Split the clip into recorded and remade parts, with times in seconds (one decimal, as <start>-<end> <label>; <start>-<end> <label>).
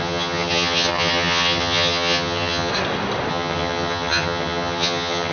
0.0-2.7 remade; 2.7-3.3 recorded; 3.3-5.3 remade